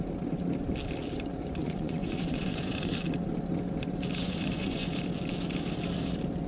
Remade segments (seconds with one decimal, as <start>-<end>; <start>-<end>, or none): 1.6-2.9; 4.2-4.9